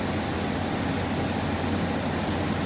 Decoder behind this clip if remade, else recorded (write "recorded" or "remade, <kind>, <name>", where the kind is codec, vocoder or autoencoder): recorded